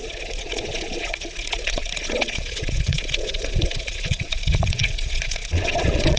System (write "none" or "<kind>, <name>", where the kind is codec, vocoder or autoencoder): vocoder, Vocos